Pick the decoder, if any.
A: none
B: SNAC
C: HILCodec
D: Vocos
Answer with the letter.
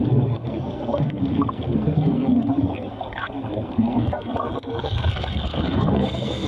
B